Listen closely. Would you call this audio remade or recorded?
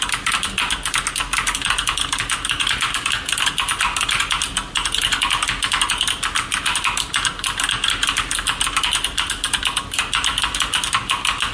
recorded